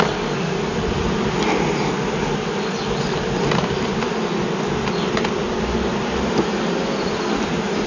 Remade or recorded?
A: recorded